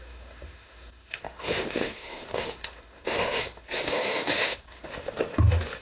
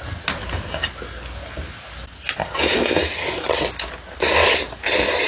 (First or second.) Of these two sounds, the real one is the second